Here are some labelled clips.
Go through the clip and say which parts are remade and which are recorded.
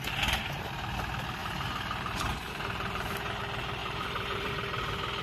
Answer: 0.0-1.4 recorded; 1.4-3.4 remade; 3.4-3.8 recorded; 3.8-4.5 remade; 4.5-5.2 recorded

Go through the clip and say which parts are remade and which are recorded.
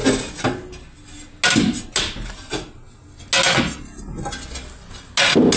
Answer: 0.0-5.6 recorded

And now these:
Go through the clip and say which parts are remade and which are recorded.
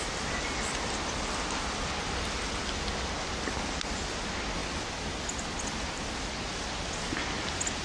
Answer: 0.0-7.8 recorded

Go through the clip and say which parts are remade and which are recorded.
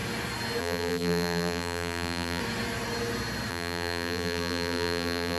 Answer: 0.0-0.6 recorded; 0.6-2.4 remade; 2.4-3.5 recorded; 3.5-5.4 remade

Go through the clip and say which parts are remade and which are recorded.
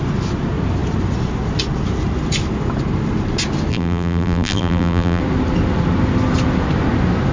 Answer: 0.0-3.7 recorded; 3.7-5.2 remade; 5.2-7.3 recorded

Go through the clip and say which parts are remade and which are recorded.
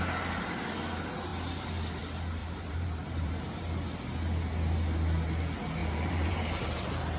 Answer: 0.0-2.4 recorded; 2.4-3.6 remade; 3.6-5.8 recorded; 5.8-7.2 remade